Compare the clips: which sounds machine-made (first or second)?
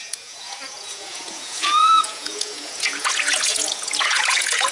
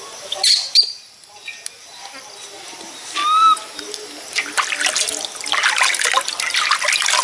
first